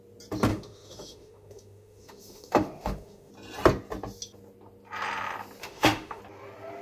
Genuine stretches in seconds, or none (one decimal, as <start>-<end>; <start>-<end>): 0.0-0.5; 3.3-5.6; 6.2-6.8